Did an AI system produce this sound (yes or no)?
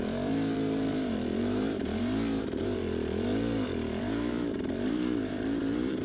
yes